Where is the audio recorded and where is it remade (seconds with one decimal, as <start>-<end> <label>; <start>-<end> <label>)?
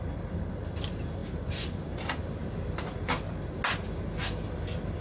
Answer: 0.0-5.0 recorded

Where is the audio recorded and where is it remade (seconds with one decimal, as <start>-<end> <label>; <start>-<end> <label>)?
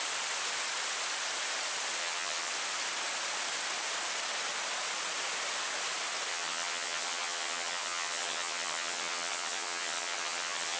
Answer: 0.0-2.0 recorded; 2.0-2.5 remade; 2.5-6.3 recorded; 6.3-10.8 remade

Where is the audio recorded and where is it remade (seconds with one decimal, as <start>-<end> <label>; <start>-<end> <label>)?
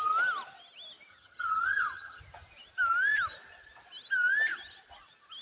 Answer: 0.0-1.1 recorded; 1.1-2.2 remade; 2.2-5.4 recorded